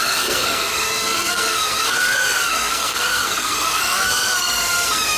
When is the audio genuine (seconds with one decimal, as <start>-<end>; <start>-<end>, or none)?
none

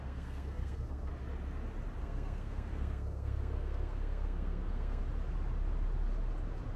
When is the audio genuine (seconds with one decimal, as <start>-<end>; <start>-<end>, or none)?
1.1-2.0; 5.0-6.8

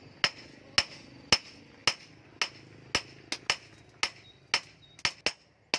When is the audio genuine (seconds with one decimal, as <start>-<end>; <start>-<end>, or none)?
0.0-5.8

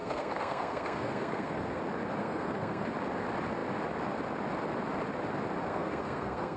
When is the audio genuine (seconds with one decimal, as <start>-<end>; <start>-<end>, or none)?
1.8-2.2; 2.9-5.7

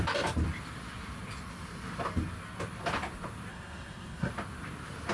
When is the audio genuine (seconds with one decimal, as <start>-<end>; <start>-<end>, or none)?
0.0-3.5; 4.3-5.1

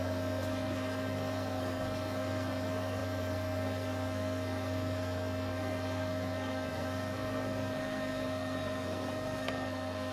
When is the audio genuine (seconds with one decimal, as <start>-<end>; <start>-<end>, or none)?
none

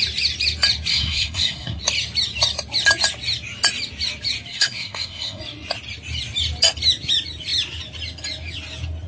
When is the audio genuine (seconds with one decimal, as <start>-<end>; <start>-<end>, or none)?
0.0-0.9; 1.8-4.5; 5.4-9.1